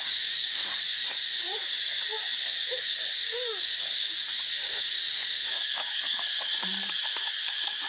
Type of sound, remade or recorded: remade